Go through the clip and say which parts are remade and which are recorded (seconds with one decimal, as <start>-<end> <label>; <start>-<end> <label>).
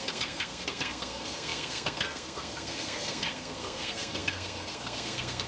0.0-5.5 remade